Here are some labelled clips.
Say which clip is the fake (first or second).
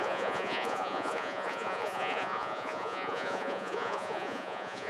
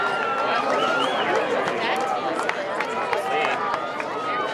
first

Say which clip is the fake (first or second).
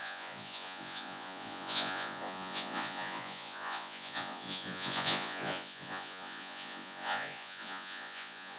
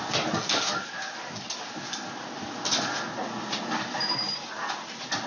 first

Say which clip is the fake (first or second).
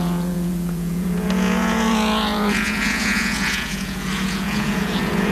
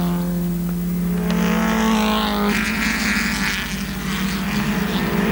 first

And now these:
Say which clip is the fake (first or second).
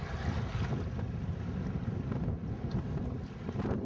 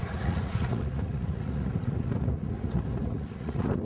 second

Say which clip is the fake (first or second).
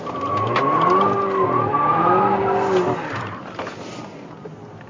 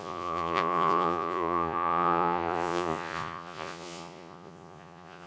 second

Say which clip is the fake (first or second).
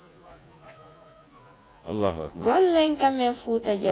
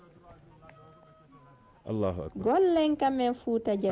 first